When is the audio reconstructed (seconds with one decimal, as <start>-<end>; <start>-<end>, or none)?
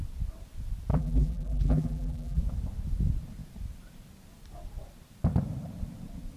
0.9-2.4